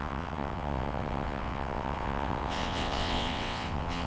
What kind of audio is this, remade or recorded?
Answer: remade